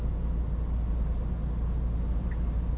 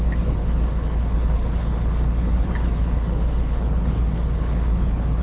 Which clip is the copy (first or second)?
second